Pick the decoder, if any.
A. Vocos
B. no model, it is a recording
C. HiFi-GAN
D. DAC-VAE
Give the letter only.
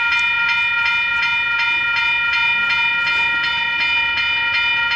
B